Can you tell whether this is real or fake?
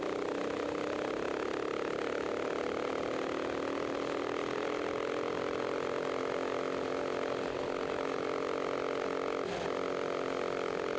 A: real